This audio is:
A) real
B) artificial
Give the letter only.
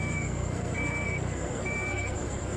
B